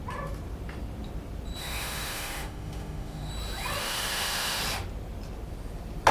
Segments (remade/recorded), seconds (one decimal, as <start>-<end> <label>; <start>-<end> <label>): 0.0-1.6 recorded; 1.6-3.3 remade; 3.3-3.8 recorded; 3.8-4.6 remade; 4.6-6.1 recorded